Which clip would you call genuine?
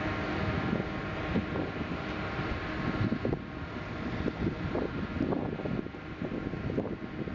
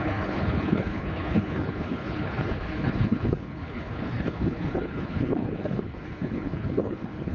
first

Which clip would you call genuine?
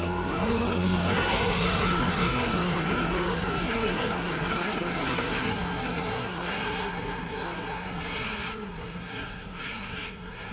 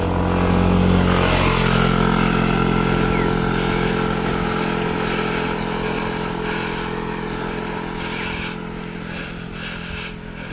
second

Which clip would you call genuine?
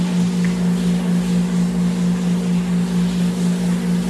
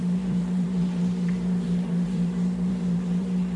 first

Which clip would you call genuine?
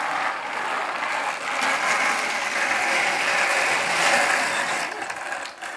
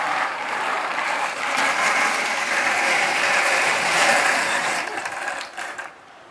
first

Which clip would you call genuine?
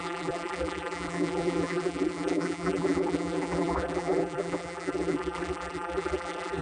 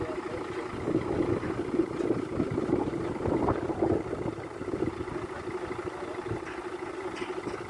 second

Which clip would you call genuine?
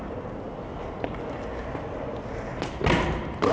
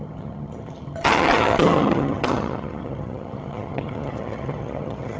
first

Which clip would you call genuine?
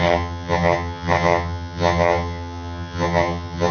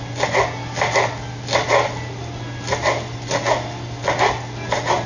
second